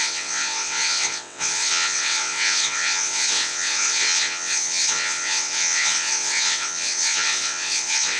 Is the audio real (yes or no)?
no